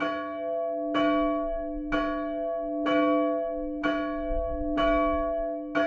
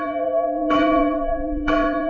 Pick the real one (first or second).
first